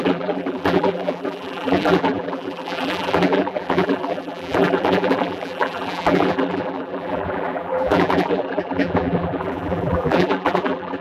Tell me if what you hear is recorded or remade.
remade